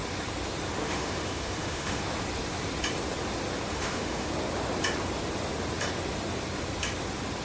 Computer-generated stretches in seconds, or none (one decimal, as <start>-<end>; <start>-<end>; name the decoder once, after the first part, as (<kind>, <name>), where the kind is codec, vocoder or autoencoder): 0.8-2.0 (autoencoder, DAC-VAE); 3.7-4.3